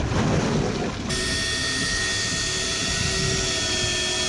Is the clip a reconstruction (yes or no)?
no